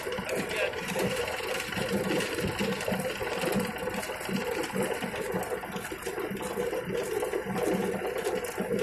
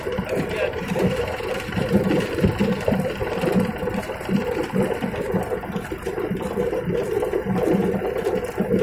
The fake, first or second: second